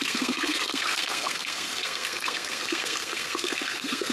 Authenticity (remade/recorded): remade